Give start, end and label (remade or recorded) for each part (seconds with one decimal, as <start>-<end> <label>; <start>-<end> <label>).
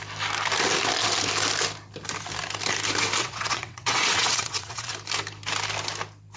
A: 0.0-3.2 recorded; 3.2-4.9 remade; 4.9-6.4 recorded